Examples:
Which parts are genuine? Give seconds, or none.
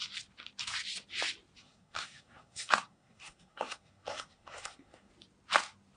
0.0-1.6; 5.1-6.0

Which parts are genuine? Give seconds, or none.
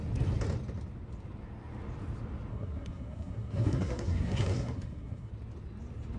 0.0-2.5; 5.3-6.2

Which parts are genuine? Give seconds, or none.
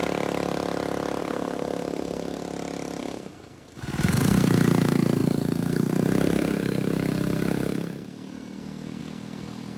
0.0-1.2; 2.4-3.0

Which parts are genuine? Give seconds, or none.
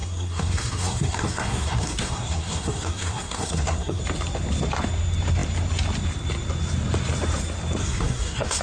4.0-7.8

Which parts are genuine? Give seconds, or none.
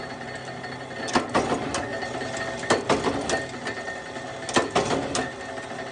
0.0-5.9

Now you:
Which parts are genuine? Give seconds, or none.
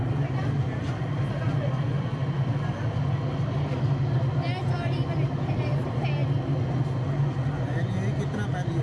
0.0-8.8